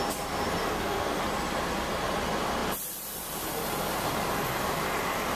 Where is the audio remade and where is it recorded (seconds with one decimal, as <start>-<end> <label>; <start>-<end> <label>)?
0.0-0.6 recorded; 0.6-1.2 remade; 1.2-5.4 recorded